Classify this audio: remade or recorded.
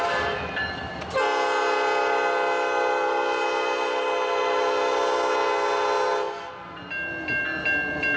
recorded